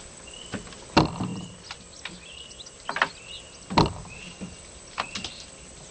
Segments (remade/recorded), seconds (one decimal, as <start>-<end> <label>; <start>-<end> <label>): 0.0-5.9 recorded